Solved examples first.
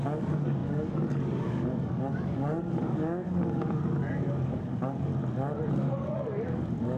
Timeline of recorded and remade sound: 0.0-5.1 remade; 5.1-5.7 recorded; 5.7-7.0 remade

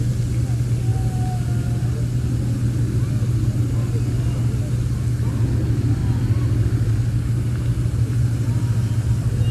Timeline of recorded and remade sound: 0.0-9.5 recorded

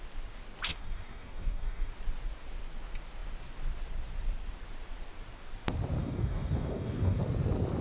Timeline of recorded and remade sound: 0.0-0.7 recorded; 0.7-1.9 remade; 1.9-6.0 recorded; 6.0-7.2 remade; 7.2-7.8 recorded

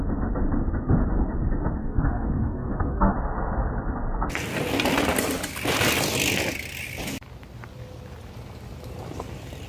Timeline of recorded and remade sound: 0.0-1.8 recorded; 1.8-3.1 remade; 3.1-9.7 recorded

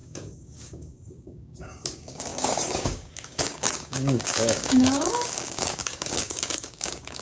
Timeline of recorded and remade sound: 0.0-7.2 remade